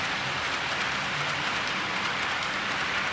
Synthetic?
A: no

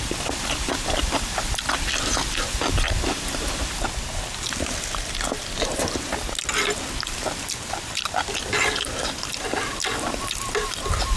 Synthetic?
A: no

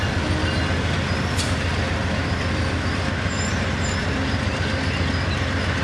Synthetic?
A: no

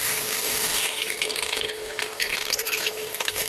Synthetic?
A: yes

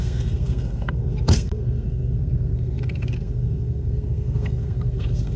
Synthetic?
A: yes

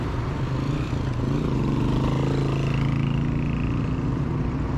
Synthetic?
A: no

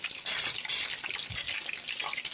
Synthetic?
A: no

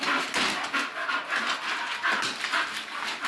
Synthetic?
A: no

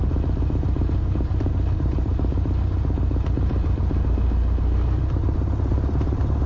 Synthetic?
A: no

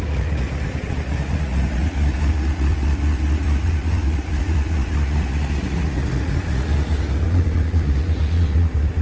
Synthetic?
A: yes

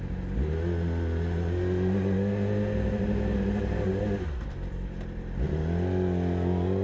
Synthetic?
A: no